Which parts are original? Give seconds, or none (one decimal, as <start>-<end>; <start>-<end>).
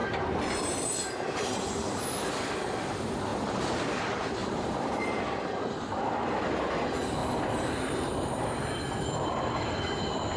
2.0-4.4; 5.5-7.2; 10.0-10.4